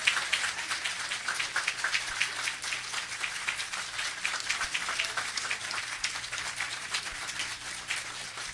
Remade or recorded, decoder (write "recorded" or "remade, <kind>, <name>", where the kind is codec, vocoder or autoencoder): remade, vocoder, BigVGAN v2